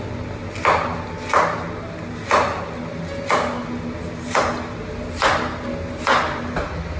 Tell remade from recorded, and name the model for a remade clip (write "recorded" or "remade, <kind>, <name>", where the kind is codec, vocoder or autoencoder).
recorded